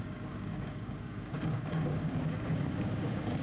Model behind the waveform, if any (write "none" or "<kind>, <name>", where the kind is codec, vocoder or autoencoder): codec, DAC